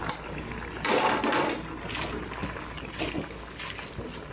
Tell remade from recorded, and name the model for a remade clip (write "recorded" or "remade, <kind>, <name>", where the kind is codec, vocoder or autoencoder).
recorded